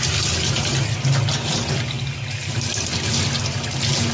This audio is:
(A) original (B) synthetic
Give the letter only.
A